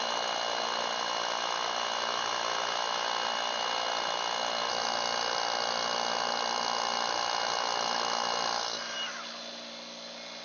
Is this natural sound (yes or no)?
yes